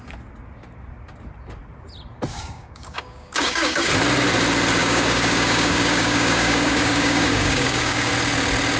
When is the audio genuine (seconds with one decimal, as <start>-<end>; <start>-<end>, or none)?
0.0-2.3; 3.9-4.8; 8.1-8.8